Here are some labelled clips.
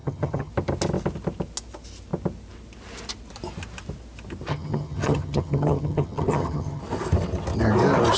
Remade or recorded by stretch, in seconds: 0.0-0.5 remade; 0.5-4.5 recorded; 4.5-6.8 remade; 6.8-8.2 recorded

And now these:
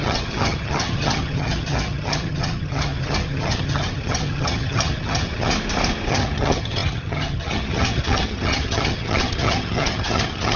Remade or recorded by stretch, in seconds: 0.0-5.5 remade; 5.5-6.1 recorded; 6.1-10.6 remade

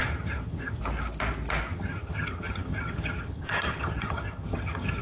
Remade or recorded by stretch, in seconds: 0.0-0.8 remade; 0.8-1.7 recorded; 1.7-5.0 remade

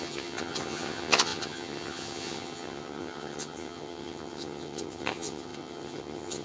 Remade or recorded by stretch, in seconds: 0.0-6.4 remade